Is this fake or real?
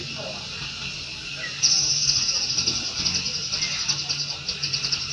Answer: real